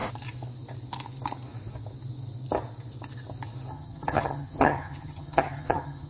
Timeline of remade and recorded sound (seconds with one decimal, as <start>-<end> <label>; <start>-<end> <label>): 0.0-3.7 recorded; 3.7-6.1 remade